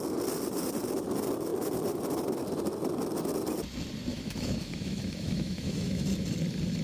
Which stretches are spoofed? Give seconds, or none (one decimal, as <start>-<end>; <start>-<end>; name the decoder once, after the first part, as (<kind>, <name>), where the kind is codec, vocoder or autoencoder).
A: 4.1-6.1 (autoencoder, DAC-VAE)